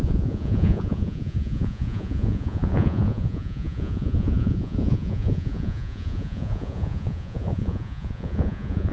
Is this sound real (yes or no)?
no